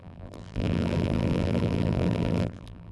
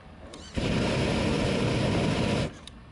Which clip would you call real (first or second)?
second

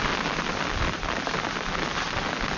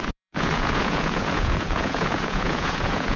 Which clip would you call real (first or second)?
first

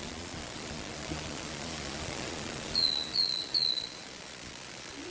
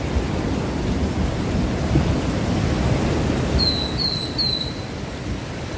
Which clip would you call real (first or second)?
second